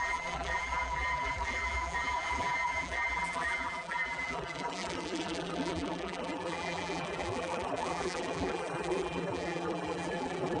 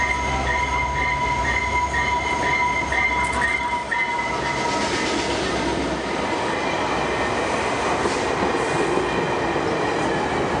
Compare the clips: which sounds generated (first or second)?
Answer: first